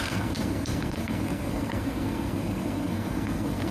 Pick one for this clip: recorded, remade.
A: remade